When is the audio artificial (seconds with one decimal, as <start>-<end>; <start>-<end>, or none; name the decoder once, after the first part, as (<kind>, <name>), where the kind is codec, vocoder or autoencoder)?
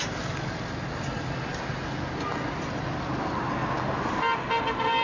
none